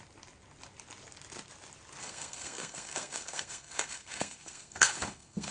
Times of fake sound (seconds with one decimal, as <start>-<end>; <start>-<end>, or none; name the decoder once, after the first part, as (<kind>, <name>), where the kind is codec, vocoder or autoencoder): 2.0-5.5 (codec, SNAC)